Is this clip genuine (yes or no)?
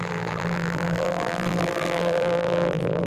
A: no